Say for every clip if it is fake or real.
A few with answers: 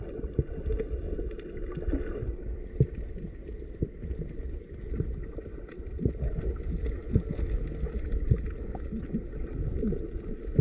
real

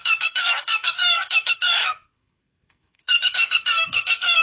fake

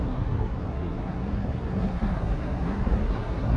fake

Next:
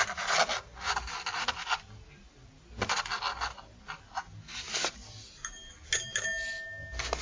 real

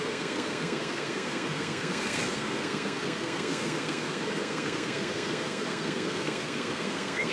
fake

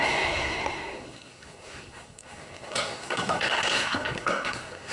fake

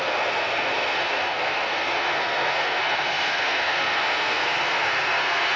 fake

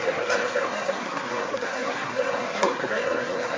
fake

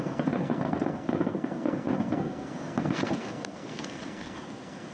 fake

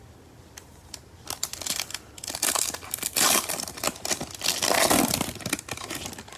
real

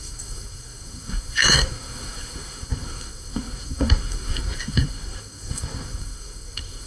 fake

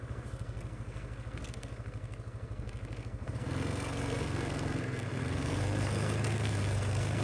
fake